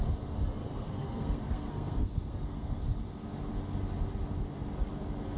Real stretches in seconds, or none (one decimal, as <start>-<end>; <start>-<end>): 0.0-0.6; 2.8-5.4

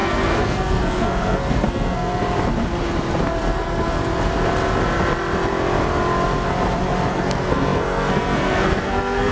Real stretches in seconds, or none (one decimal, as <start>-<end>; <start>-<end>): 2.2-3.4; 4.0-7.1

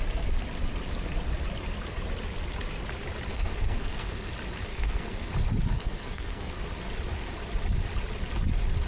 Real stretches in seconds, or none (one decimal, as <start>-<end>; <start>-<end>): 0.0-3.3; 4.3-4.7; 5.3-5.7; 6.6-8.9

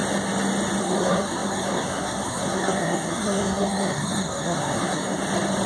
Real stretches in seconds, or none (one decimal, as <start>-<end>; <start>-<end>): 0.0-0.8; 5.2-5.7

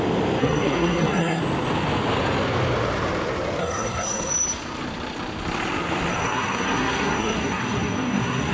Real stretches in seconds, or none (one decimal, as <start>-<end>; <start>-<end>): 0.0-0.4; 1.4-3.6; 4.3-6.1

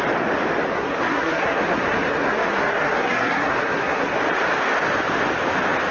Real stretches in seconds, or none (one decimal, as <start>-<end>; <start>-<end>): 0.0-0.7; 4.2-5.9

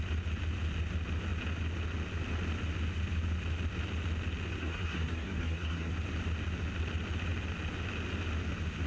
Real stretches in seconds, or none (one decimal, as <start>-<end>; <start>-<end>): 0.0-4.6; 5.9-8.9